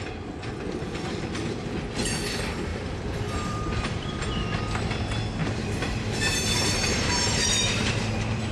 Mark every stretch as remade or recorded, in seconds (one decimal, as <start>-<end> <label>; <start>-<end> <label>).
0.0-2.7 recorded; 2.7-4.3 remade; 4.3-5.4 recorded; 5.4-8.5 remade